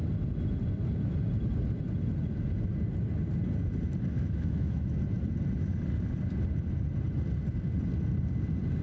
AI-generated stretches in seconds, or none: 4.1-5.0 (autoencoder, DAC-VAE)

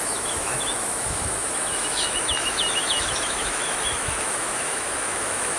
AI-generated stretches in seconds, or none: 0.0-5.6 (autoencoder, DAC-VAE)

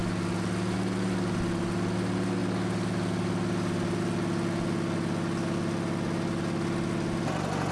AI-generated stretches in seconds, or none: none

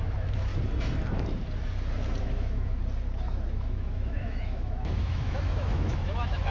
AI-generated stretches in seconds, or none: 0.0-0.5 (autoencoder, DAC-VAE); 2.2-2.8; 3.5-6.5

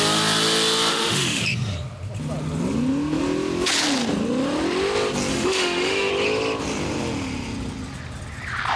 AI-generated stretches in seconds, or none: 0.9-1.4 (autoencoder, DAC-VAE); 5.3-6.1